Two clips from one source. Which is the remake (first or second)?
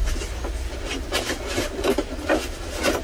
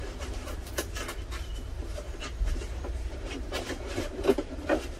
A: second